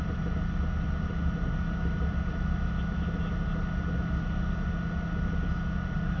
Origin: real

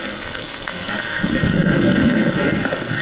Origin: fake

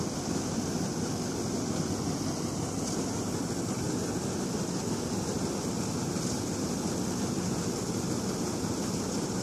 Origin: real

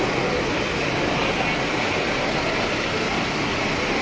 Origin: real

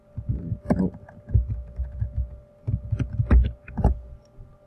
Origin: real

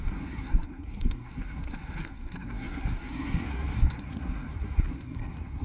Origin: fake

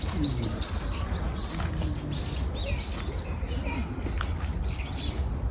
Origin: real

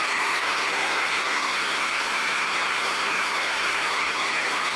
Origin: fake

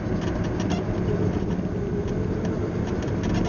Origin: real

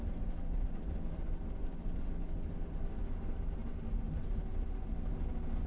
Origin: real